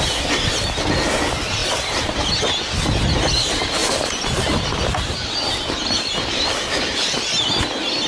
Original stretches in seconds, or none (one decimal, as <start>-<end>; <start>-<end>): 0.0-8.1